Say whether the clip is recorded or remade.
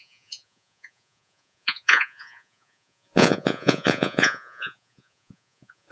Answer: remade